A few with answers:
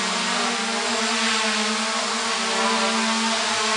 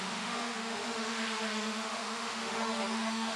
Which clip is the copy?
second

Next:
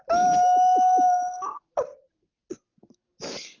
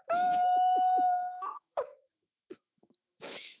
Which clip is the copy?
second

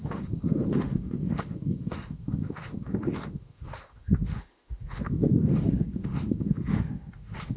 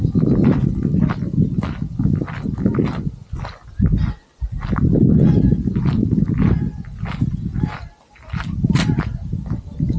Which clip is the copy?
first